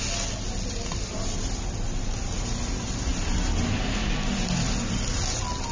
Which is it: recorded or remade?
recorded